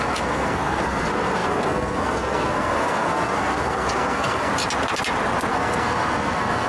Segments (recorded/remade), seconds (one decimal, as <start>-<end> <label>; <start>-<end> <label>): 0.0-4.5 remade; 4.5-5.5 recorded; 5.5-6.7 remade